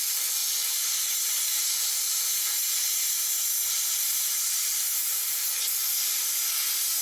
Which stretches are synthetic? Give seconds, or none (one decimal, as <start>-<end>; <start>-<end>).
none